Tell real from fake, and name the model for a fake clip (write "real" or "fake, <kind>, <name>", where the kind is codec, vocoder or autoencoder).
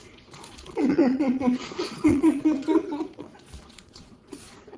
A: fake, vocoder, Vocos